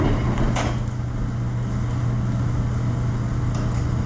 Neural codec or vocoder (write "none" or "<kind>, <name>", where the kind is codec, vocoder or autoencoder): none